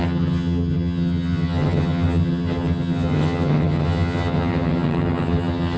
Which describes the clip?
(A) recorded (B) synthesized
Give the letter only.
B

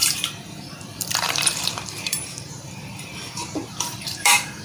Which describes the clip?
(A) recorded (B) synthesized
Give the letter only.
B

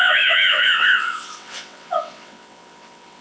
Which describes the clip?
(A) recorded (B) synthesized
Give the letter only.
B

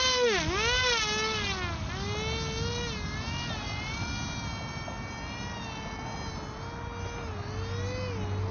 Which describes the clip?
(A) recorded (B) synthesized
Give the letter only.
A